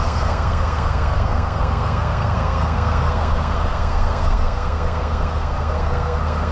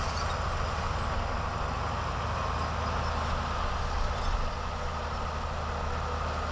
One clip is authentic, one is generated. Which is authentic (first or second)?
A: second